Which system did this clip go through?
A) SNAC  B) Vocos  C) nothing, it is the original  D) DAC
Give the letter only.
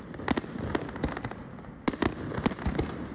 C